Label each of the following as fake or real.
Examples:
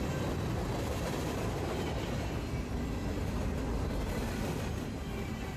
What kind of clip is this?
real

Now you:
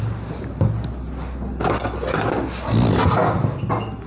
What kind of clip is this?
real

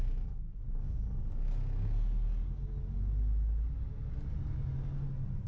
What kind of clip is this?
real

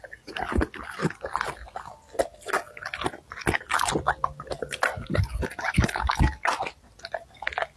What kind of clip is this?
real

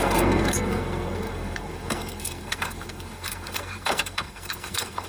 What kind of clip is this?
fake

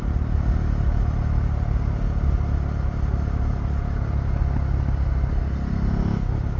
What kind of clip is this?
real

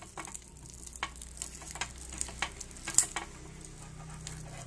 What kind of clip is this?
real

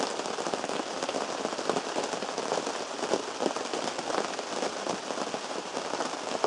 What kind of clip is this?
real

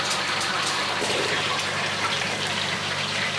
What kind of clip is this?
fake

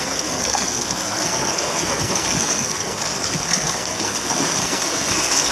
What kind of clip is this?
fake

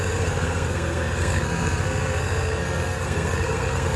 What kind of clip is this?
fake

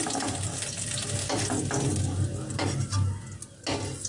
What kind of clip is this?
real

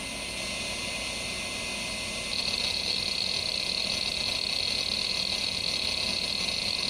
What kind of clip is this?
real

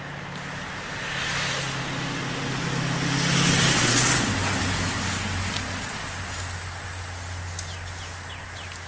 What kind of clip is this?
real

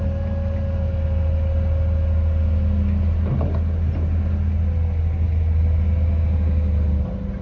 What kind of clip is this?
real